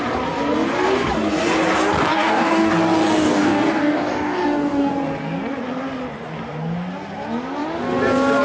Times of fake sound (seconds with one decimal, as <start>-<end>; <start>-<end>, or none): 2.1-2.7; 3.2-4.9